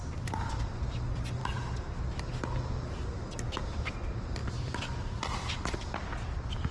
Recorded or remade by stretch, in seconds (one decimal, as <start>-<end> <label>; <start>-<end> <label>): 0.0-4.4 recorded; 4.4-5.2 remade; 5.2-6.7 recorded